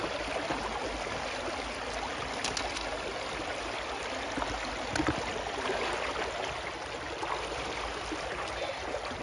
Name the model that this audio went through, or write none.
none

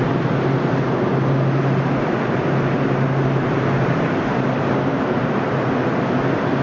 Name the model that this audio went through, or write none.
none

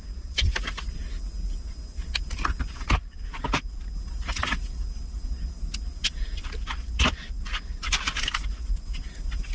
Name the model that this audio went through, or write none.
none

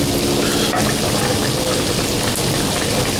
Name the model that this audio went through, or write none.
none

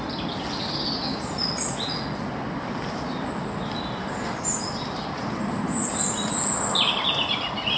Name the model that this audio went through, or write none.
none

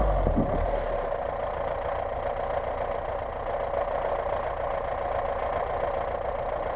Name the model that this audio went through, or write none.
none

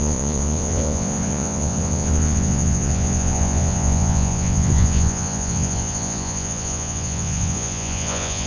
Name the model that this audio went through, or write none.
vocoder, Vocos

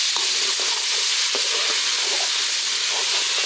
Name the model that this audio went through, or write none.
none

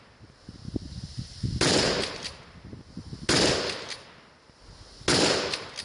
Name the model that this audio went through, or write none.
none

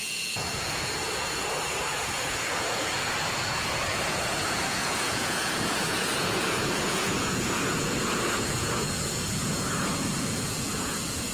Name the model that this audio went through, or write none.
vocoder, Vocos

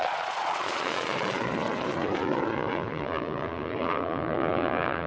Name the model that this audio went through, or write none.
vocoder, Vocos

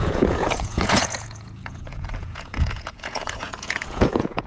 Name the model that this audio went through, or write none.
vocoder, Vocos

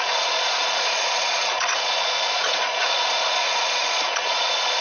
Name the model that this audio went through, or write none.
vocoder, Vocos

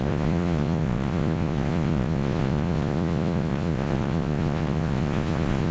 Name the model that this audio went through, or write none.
vocoder, Vocos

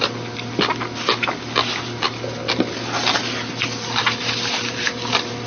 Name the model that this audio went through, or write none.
none